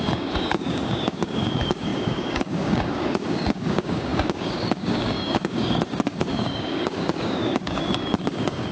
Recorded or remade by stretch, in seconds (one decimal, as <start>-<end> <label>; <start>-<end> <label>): 0.0-8.7 remade